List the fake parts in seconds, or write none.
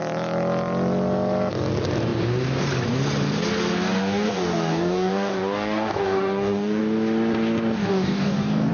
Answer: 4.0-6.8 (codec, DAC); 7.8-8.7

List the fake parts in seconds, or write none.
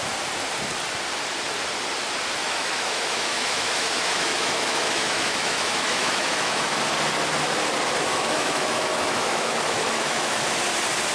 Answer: 2.4-6.8 (autoencoder, DAC-VAE); 8.1-10.4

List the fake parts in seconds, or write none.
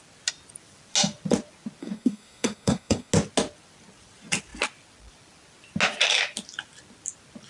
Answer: 1.8-3.1 (codec, SNAC)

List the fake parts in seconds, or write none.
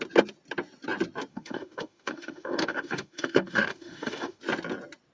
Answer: 1.3-4.4 (autoencoder, DAC-VAE)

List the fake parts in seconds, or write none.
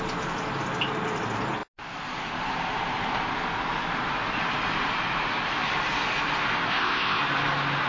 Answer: 6.7-7.2 (codec, ZipCodec)